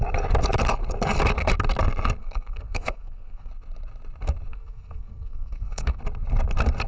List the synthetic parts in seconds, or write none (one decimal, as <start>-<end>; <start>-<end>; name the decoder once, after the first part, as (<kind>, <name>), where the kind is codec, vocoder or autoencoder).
2.2-3.5 (codec, SNAC); 4.5-6.0